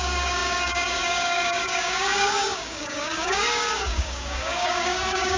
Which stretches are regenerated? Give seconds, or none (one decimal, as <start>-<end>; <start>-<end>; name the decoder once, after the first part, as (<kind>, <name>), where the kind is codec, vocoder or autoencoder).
0.0-5.4 (codec, DAC)